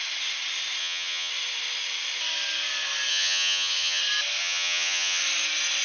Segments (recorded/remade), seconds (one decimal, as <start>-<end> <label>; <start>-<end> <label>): 0.0-0.8 recorded; 0.8-1.3 remade; 1.3-3.1 recorded; 3.1-4.0 remade; 4.0-4.4 recorded; 4.4-5.2 remade; 5.2-5.8 recorded